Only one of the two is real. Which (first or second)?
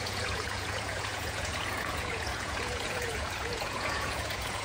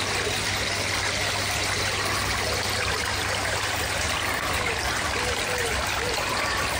second